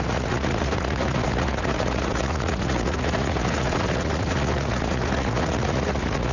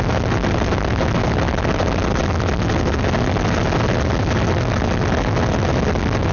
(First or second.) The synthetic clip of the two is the first